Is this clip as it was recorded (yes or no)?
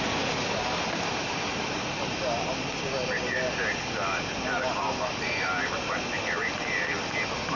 yes